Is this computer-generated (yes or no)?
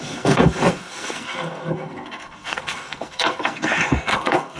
yes